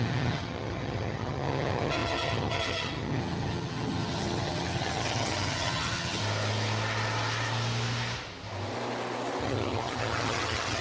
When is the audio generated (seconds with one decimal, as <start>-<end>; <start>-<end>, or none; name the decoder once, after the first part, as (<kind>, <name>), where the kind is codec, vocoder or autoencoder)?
0.0-6.2 (vocoder, HiFi-GAN); 9.4-10.8